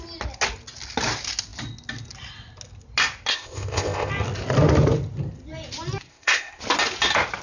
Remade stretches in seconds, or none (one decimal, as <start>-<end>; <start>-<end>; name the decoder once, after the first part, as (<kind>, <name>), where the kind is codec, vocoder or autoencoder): 3.3-4.1 (codec, ZipCodec); 6.1-6.6